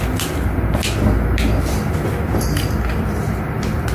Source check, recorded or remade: remade